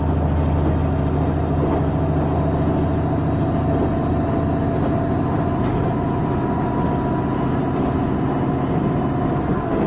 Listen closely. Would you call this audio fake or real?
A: real